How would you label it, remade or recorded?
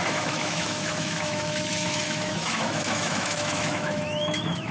remade